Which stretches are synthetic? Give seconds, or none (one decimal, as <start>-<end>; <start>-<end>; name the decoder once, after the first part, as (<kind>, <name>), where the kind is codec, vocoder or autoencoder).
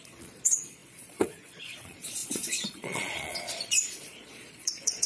0.0-5.1 (vocoder, Vocos)